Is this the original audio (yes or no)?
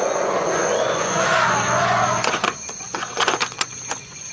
no